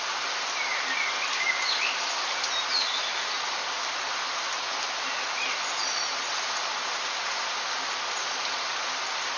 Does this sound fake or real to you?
real